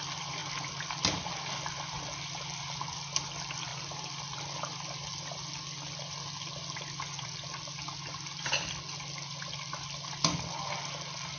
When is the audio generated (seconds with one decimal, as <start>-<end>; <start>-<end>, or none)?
none